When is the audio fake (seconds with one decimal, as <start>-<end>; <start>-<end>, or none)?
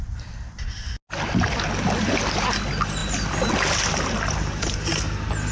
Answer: none